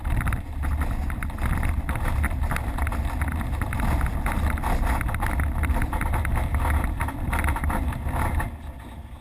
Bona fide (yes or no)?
yes